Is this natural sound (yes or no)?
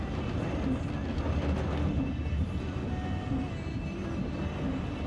yes